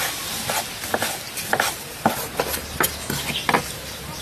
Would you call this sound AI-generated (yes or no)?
no